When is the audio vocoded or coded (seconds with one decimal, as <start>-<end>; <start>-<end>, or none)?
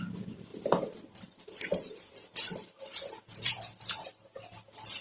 2.9-3.6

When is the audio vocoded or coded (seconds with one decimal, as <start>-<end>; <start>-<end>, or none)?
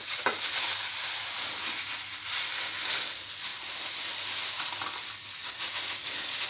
none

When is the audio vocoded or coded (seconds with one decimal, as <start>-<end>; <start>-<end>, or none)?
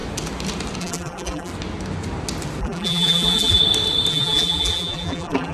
0.8-1.5; 2.6-3.6; 4.1-5.5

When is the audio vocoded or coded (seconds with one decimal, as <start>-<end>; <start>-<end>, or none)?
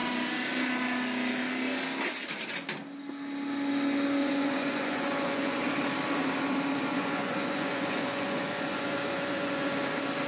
4.2-5.6; 6.9-9.7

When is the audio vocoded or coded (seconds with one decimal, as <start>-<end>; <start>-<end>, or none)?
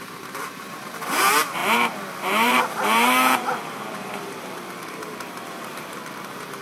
0.0-6.6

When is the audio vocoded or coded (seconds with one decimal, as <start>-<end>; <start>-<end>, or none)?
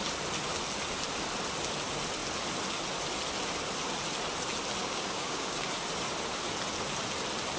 4.8-5.7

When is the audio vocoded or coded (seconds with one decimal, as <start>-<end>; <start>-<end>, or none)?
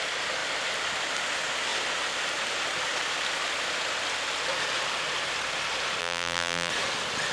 6.0-6.7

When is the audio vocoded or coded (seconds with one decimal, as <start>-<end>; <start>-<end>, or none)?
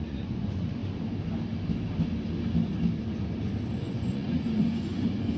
0.0-0.8; 3.8-5.4